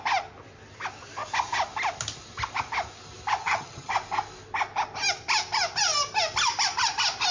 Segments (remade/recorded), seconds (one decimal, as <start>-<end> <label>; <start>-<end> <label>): 0.0-3.4 recorded; 3.4-3.9 remade; 3.9-7.3 recorded

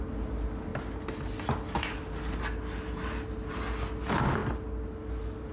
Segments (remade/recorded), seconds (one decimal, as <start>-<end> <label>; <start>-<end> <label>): 0.0-5.5 recorded